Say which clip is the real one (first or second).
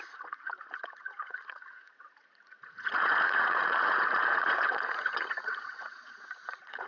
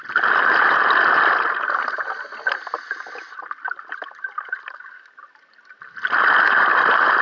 second